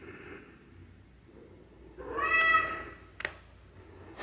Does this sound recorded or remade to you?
recorded